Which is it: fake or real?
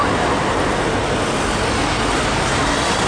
real